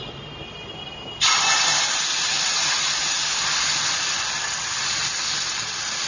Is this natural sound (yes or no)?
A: no